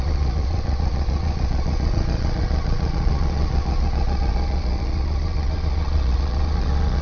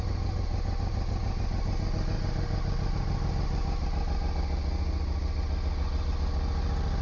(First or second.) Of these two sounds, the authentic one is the second